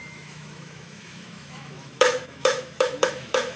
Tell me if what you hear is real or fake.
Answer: fake